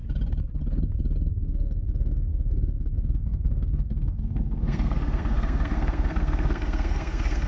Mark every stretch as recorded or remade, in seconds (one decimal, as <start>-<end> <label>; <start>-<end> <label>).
0.0-1.3 recorded; 1.3-7.5 remade